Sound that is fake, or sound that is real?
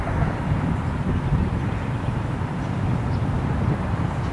fake